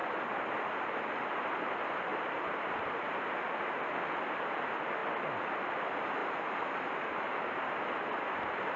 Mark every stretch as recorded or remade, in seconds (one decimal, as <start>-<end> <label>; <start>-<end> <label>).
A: 0.0-2.1 recorded; 2.1-3.6 remade; 3.6-8.8 recorded

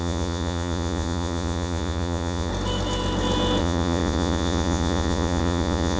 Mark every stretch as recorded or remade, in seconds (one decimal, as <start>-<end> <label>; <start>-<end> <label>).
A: 0.0-2.5 remade; 2.5-3.6 recorded; 3.6-6.0 remade

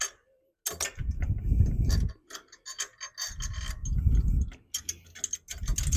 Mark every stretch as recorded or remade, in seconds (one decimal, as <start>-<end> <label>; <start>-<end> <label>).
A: 0.0-6.0 recorded

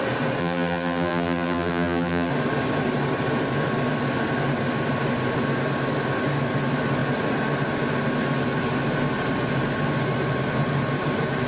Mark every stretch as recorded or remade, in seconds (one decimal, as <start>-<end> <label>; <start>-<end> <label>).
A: 0.0-0.4 recorded; 0.4-2.3 remade; 2.3-11.5 recorded

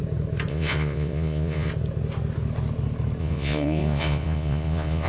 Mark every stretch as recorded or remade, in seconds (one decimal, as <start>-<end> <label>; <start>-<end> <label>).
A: 0.0-0.5 recorded; 0.5-1.7 remade; 1.7-3.2 recorded; 3.2-5.1 remade

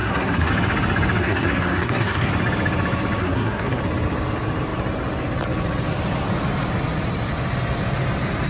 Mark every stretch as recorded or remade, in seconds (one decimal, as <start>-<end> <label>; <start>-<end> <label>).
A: 0.0-0.5 remade; 0.5-1.2 recorded; 1.2-2.3 remade; 2.3-3.2 recorded; 3.2-3.8 remade; 3.8-8.5 recorded

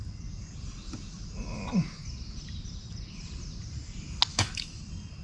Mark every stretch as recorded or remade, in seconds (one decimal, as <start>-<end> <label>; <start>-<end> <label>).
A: 0.0-4.3 recorded; 4.3-4.8 remade; 4.8-5.2 recorded